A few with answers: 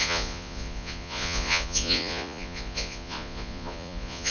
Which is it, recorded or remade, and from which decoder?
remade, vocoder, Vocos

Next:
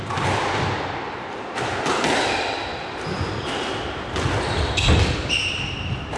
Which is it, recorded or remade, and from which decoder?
recorded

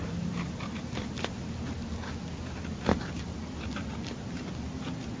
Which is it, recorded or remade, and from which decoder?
recorded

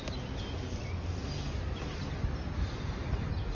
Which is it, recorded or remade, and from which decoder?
recorded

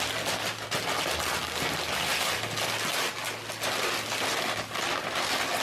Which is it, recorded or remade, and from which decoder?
recorded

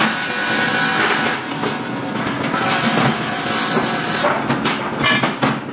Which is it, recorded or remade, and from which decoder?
recorded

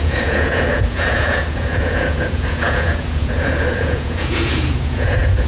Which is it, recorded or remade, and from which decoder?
remade, vocoder, Vocos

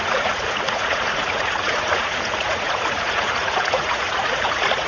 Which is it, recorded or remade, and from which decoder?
remade, vocoder, Vocos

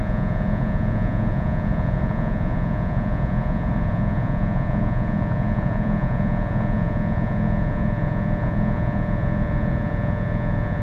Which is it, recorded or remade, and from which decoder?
remade, vocoder, Vocos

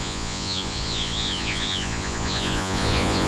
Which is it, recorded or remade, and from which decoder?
remade, vocoder, Vocos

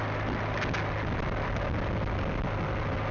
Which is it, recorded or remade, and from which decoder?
recorded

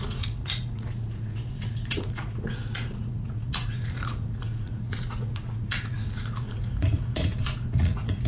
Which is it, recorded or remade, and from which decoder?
remade, vocoder, Vocos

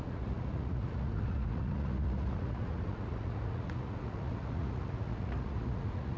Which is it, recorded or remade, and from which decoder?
remade, vocoder, Vocos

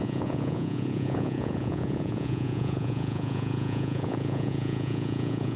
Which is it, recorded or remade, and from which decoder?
remade, vocoder, Vocos